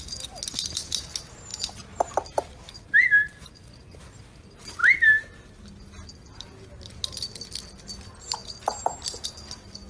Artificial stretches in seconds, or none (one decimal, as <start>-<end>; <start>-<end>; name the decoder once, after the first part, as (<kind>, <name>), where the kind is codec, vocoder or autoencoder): none